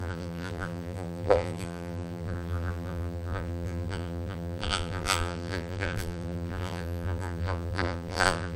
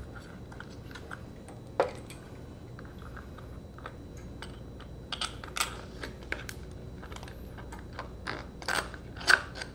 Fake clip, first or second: first